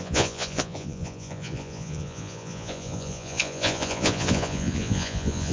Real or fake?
fake